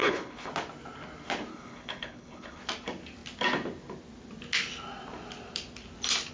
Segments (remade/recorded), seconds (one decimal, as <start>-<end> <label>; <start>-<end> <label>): 0.0-0.5 remade; 0.5-1.5 recorded; 1.5-2.6 remade; 2.6-6.3 recorded